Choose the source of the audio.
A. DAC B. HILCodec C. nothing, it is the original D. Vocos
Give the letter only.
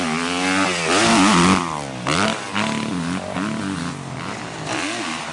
C